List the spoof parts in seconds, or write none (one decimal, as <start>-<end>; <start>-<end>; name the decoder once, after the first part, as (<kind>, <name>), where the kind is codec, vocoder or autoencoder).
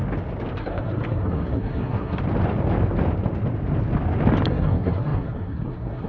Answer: 0.6-2.2 (codec, SNAC); 4.5-6.1